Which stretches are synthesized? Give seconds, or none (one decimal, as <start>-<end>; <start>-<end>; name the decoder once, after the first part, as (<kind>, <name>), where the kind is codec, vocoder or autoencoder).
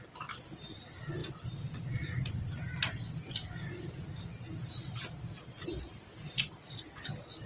none